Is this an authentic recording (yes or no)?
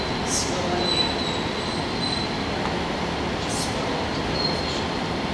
yes